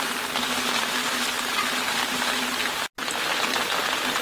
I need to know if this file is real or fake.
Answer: real